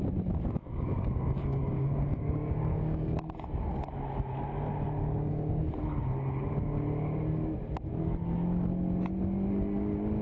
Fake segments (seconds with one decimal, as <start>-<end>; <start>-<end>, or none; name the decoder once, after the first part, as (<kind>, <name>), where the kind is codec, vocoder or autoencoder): 0.6-3.3 (codec, DAC); 5.0-5.7